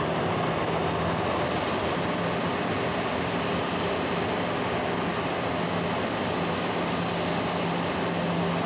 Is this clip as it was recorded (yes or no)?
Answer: yes